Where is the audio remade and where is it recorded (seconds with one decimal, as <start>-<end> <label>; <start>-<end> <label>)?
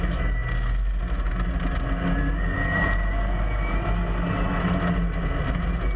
0.0-6.0 recorded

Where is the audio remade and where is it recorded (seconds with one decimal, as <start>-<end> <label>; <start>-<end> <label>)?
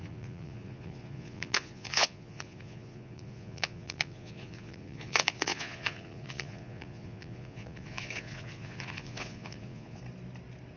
0.0-10.0 remade; 10.0-10.8 recorded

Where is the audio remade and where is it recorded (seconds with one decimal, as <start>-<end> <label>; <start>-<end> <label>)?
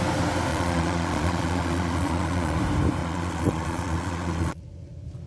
0.0-0.5 recorded; 0.5-2.6 remade; 2.6-3.0 recorded; 3.0-4.6 remade; 4.6-5.3 recorded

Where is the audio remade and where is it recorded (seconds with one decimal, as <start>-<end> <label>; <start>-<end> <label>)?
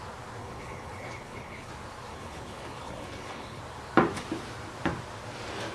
0.0-0.4 recorded; 0.4-1.7 remade; 1.7-2.1 recorded; 2.1-3.6 remade; 3.6-5.7 recorded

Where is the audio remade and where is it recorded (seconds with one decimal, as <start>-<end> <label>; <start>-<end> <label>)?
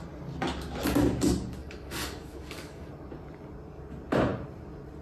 0.0-1.6 recorded; 1.6-2.9 remade; 2.9-5.0 recorded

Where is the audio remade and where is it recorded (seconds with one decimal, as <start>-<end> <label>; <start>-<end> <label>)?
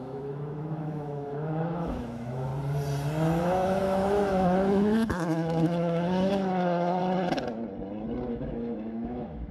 0.0-2.5 remade; 2.5-3.4 recorded; 3.4-7.0 remade; 7.0-8.3 recorded; 8.3-9.5 remade